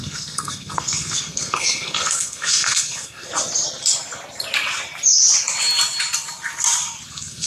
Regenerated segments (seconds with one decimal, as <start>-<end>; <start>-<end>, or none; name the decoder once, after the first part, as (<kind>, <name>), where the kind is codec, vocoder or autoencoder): 0.0-3.3 (codec, SNAC); 7.1-7.5